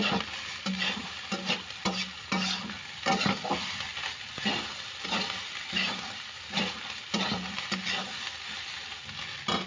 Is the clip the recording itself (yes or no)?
yes